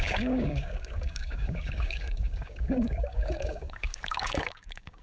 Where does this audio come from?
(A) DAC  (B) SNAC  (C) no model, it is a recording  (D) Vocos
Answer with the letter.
A